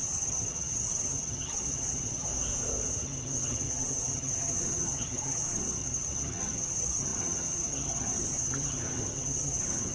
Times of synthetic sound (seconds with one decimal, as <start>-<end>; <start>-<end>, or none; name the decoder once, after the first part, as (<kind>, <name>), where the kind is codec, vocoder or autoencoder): 0.0-2.3 (vocoder, HiFi-GAN); 2.9-9.9